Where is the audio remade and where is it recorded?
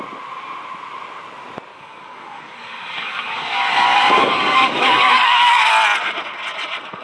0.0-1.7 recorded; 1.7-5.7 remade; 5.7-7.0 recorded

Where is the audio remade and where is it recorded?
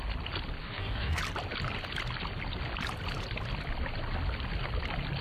0.0-0.6 recorded; 0.6-1.2 remade; 1.2-5.2 recorded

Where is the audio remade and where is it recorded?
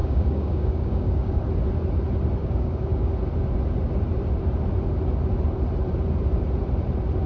0.0-1.4 remade; 1.4-2.4 recorded; 2.4-3.1 remade; 3.1-7.3 recorded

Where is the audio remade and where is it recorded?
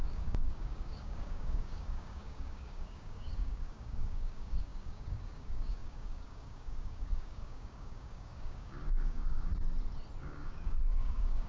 0.0-9.5 remade; 9.5-10.2 recorded; 10.2-11.5 remade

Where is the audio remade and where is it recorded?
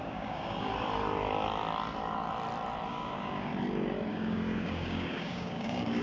0.0-0.7 remade; 0.7-2.9 recorded; 2.9-3.5 remade; 3.5-4.1 recorded; 4.1-6.0 remade